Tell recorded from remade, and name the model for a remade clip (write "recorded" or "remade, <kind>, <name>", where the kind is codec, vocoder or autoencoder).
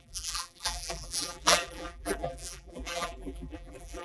remade, vocoder, BigVGAN v2